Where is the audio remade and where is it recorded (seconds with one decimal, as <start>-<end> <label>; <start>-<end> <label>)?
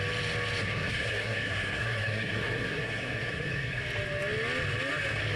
0.0-0.6 recorded; 0.6-3.8 remade; 3.8-5.4 recorded